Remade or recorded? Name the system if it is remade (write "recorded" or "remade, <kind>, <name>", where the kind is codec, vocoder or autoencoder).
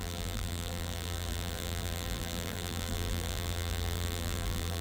remade, vocoder, BigVGAN v2